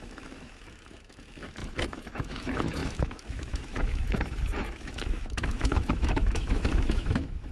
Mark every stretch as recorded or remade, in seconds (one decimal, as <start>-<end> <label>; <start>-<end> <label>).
0.0-7.5 remade